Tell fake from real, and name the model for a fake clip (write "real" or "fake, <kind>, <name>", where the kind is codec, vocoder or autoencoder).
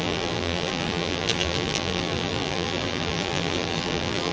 fake, vocoder, BigVGAN v2